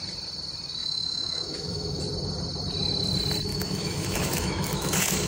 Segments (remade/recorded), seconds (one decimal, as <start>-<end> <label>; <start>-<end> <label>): 0.0-0.8 recorded; 0.8-2.0 remade; 2.0-3.5 recorded; 3.5-5.3 remade